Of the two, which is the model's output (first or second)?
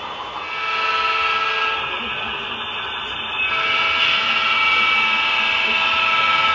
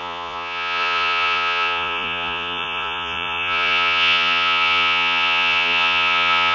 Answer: second